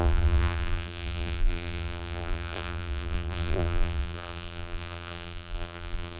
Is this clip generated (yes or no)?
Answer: yes